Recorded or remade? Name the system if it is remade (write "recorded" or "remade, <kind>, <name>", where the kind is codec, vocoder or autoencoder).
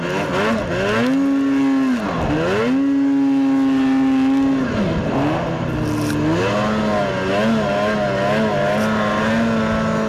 recorded